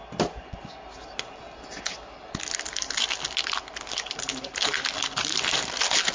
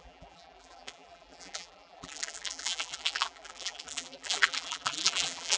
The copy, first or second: second